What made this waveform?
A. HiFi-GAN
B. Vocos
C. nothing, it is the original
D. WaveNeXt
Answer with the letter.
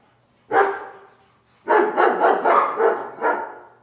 C